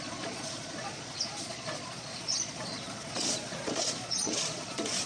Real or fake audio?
fake